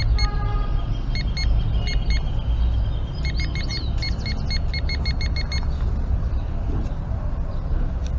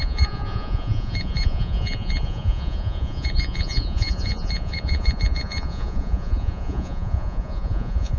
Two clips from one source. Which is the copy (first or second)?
second